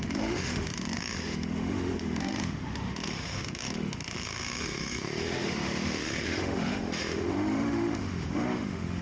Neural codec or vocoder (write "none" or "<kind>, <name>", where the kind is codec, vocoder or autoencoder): autoencoder, DAC-VAE